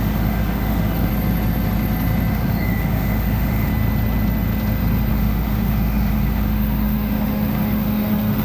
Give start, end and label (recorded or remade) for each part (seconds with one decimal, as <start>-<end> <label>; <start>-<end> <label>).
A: 0.0-1.1 remade; 1.1-2.3 recorded; 2.3-3.7 remade; 3.7-5.1 recorded; 5.1-8.4 remade